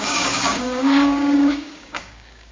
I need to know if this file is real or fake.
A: fake